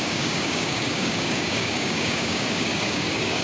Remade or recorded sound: remade